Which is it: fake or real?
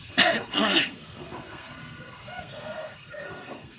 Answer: fake